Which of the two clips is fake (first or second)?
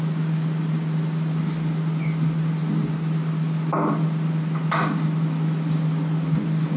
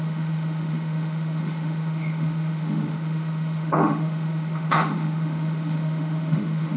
second